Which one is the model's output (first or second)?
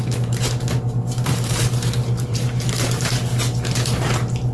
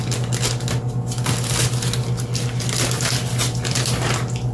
first